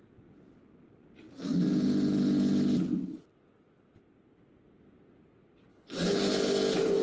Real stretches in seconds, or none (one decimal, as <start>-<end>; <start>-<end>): 0.0-5.7; 6.3-7.0